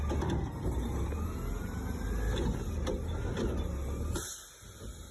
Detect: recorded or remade recorded